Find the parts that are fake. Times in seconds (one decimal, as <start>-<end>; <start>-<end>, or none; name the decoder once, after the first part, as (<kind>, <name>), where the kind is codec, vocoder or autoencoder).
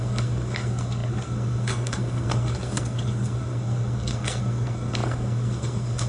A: 0.0-6.1 (codec, SNAC)